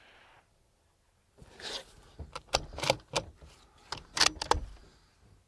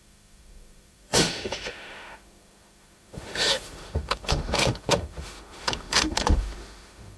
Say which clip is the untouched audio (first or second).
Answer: first